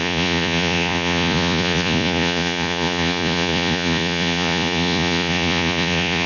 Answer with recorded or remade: remade